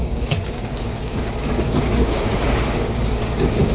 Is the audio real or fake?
fake